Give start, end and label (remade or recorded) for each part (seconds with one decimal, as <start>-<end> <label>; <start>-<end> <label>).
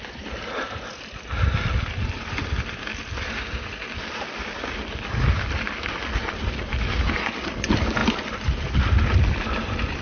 0.0-10.0 recorded